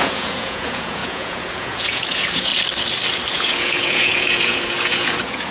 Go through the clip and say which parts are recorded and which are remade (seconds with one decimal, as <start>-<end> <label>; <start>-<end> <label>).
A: 0.0-2.5 remade; 2.5-3.3 recorded; 3.3-5.5 remade